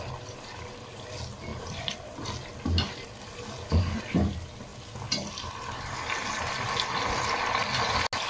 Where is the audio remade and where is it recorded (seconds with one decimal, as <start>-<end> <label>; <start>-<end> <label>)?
0.0-8.3 recorded